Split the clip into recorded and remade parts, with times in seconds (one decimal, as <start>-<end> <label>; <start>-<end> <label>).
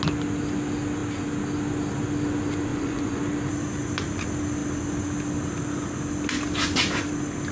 0.0-2.7 recorded; 2.7-3.2 remade; 3.2-7.5 recorded